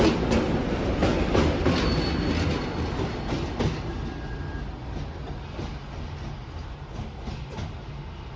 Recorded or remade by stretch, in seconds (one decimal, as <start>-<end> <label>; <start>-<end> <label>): 0.0-8.4 recorded